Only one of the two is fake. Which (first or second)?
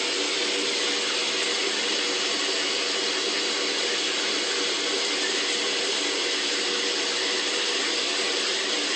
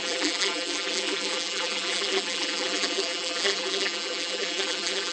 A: second